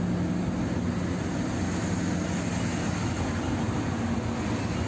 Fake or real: real